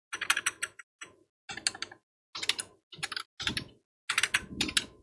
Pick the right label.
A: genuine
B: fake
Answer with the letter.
A